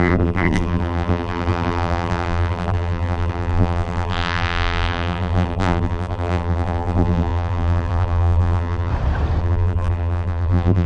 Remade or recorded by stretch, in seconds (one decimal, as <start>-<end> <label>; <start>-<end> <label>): 0.0-8.9 remade; 8.9-9.4 recorded; 9.4-10.9 remade